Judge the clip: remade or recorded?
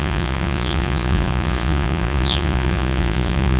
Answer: remade